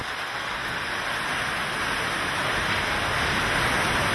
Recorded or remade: recorded